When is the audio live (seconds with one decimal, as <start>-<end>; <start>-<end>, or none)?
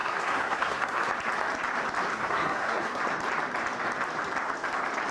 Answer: 1.1-2.1; 3.0-5.1